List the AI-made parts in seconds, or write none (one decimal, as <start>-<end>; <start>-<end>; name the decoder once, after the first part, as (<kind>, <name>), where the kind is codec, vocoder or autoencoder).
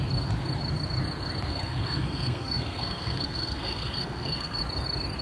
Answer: 1.5-4.6 (codec, SNAC)